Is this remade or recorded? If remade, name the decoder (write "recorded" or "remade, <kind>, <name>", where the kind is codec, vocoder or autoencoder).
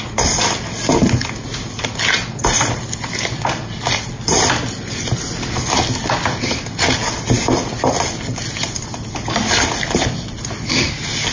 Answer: recorded